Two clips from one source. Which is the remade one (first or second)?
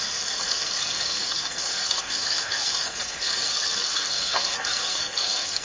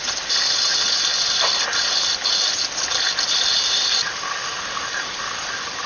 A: first